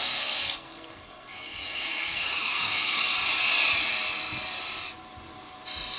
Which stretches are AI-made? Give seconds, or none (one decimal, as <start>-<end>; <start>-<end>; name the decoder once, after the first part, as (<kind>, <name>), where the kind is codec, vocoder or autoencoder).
0.0-3.0 (codec, SNAC)